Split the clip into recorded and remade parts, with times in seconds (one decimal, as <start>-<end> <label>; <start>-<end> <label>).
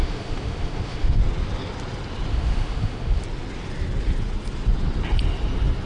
0.0-1.2 remade; 1.2-2.3 recorded; 2.3-3.2 remade; 3.2-5.9 recorded